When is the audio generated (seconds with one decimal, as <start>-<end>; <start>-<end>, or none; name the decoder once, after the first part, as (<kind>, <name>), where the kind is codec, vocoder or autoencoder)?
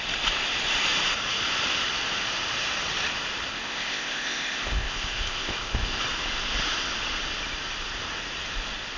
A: 3.5-6.0 (codec, ZipCodec)